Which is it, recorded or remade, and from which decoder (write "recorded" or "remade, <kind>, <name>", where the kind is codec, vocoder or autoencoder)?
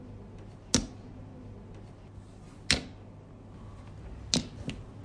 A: recorded